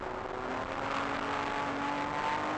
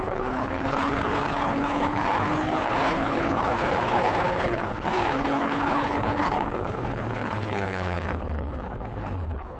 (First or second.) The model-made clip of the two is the second